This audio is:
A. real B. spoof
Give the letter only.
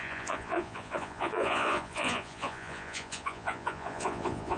B